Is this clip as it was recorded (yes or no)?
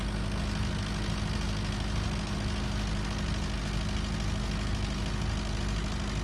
yes